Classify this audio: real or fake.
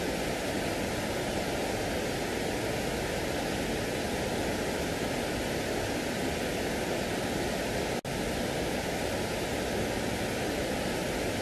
real